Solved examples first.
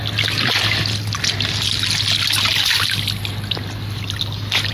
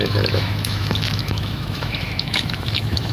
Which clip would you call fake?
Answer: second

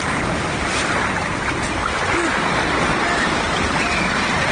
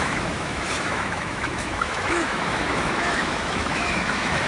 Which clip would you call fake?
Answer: second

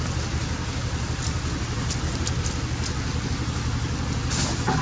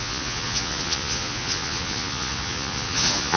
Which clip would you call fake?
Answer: second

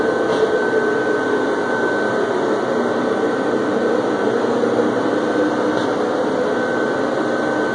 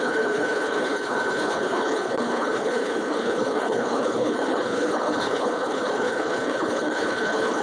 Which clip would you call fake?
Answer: second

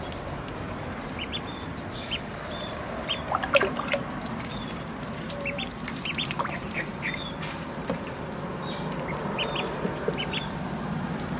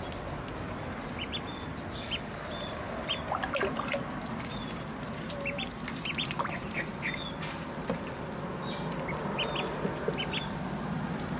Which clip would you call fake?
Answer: first